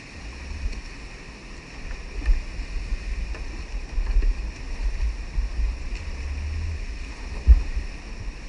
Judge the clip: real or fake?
real